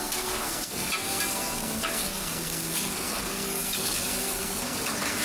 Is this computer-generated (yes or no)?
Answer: yes